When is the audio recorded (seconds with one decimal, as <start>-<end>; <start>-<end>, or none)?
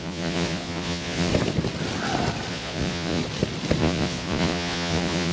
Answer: 1.3-2.5; 3.2-3.8